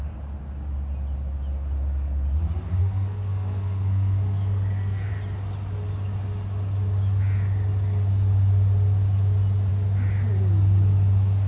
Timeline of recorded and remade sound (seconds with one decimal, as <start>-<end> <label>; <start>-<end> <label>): 0.0-2.8 recorded; 2.8-5.1 remade; 5.1-11.5 recorded